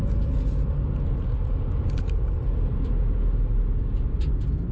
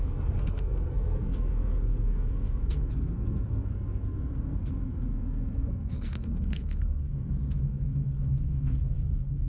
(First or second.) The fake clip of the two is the second